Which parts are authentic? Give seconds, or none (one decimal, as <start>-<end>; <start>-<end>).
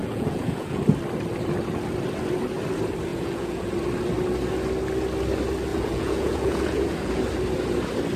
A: 0.8-3.1; 3.7-5.7; 7.2-8.2